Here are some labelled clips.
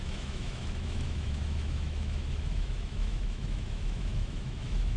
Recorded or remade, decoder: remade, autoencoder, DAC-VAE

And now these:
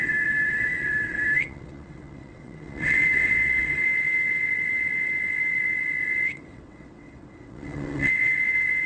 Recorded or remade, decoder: remade, vocoder, WaveNeXt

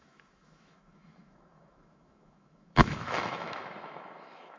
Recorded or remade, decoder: remade, autoencoder, DAC-VAE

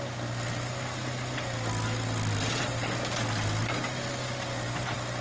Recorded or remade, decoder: recorded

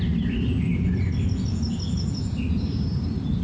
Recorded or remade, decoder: recorded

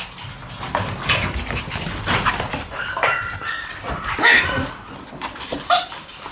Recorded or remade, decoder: recorded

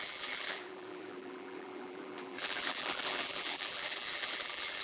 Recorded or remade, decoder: remade, vocoder, BigVGAN v2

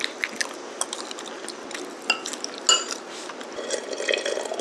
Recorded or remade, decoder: recorded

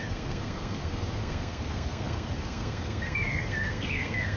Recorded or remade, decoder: remade, codec, SNAC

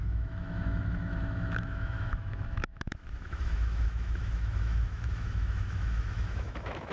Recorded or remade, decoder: remade, autoencoder, DAC-VAE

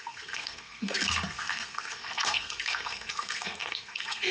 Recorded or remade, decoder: remade, codec, SNAC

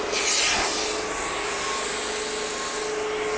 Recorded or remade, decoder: recorded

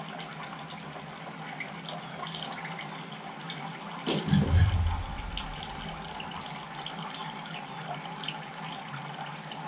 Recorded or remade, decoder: recorded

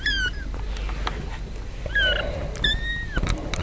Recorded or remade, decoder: recorded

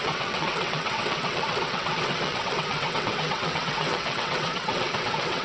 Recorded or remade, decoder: remade, vocoder, WaveNeXt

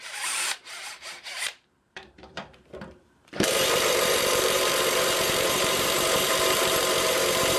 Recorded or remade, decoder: remade, vocoder, BigVGAN v2